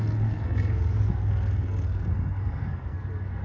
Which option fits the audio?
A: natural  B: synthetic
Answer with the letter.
B